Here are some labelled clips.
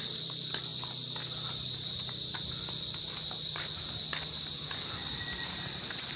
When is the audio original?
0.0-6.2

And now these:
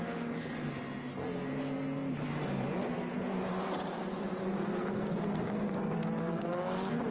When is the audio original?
0.0-4.7; 6.5-7.1